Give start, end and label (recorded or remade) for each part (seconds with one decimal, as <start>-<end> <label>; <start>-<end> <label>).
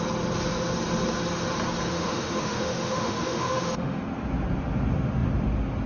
0.0-1.9 recorded; 1.9-4.0 remade; 4.0-5.9 recorded